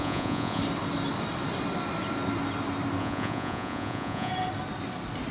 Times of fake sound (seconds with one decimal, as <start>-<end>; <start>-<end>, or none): 0.0-0.6; 3.0-4.3